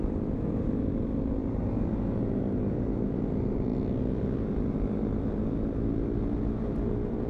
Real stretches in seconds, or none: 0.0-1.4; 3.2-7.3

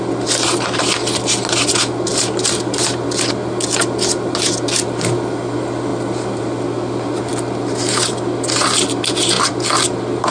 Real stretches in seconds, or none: 0.0-2.1; 2.9-10.3

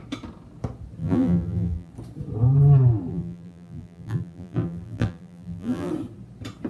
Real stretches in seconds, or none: 0.0-1.0; 1.9-3.1; 5.9-6.7